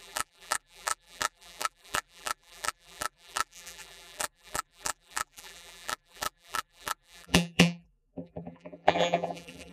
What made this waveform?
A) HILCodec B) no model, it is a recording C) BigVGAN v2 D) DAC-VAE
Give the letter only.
C